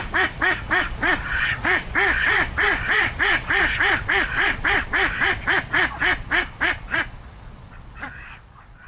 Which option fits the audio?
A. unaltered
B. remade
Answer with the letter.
B